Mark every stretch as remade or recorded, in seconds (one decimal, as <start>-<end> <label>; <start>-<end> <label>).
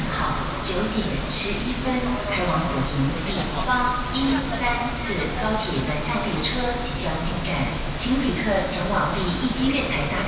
0.0-7.0 recorded; 7.0-9.7 remade; 9.7-10.3 recorded